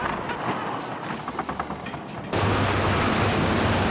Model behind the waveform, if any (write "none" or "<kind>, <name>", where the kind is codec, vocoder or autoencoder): none